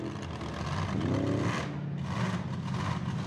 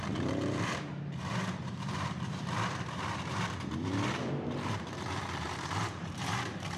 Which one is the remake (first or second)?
second